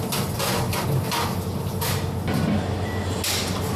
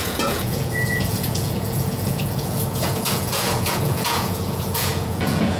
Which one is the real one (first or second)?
first